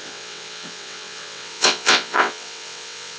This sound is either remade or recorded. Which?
remade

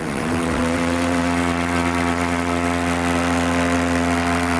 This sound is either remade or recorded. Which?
remade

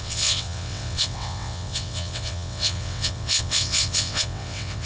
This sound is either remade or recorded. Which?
remade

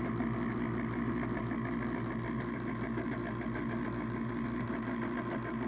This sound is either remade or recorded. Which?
recorded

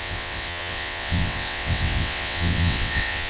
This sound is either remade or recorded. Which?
remade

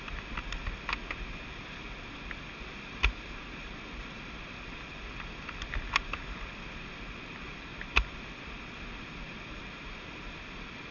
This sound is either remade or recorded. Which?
recorded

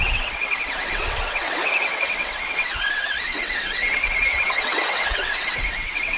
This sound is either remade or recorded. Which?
remade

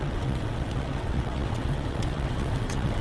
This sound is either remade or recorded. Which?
remade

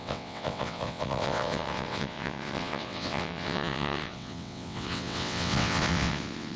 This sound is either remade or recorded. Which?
remade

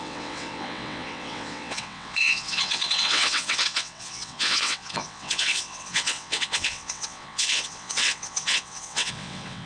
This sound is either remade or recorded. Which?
remade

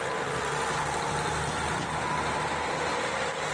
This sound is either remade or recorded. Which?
recorded